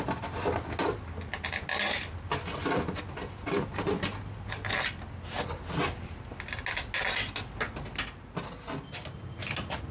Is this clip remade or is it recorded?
recorded